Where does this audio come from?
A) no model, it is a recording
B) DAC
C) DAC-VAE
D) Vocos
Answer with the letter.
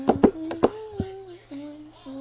A